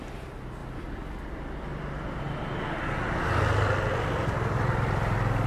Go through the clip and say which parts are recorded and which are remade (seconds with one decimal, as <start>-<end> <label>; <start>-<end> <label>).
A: 0.0-5.5 recorded